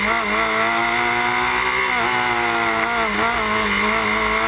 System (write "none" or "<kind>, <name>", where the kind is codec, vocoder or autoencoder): none